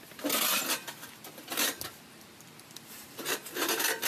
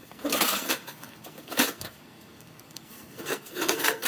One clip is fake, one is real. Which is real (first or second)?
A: first